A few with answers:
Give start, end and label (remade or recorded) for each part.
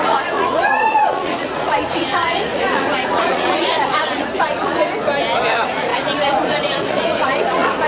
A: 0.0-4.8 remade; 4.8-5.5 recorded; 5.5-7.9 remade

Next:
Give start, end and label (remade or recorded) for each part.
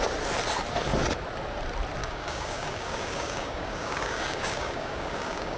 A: 0.0-2.0 recorded; 2.0-5.6 remade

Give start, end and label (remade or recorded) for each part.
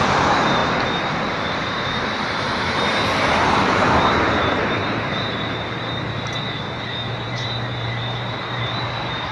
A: 0.0-9.3 remade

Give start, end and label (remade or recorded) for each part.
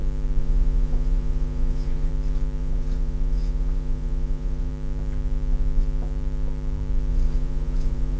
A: 0.0-0.4 recorded; 0.4-2.1 remade; 2.1-2.6 recorded; 2.6-4.7 remade; 4.7-7.1 recorded; 7.1-8.2 remade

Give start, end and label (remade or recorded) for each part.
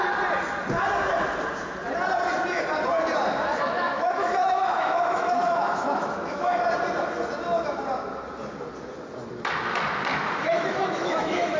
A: 0.0-3.5 recorded; 3.5-6.6 remade; 6.6-10.1 recorded; 10.1-11.6 remade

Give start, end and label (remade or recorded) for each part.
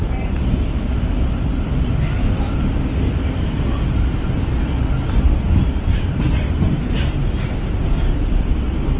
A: 0.0-9.0 recorded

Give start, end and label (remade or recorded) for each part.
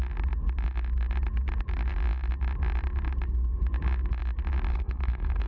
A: 0.0-4.7 recorded; 4.7-5.5 remade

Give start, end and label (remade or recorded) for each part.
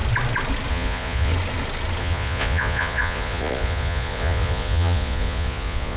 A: 0.0-0.7 recorded; 0.7-1.3 remade; 1.3-2.0 recorded; 2.0-6.0 remade